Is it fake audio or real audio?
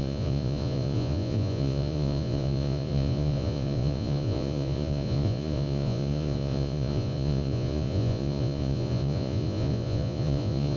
fake